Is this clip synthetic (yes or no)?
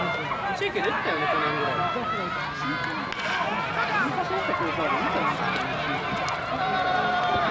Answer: no